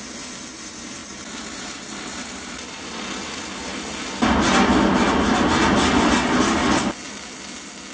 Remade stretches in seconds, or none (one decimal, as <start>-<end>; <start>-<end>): none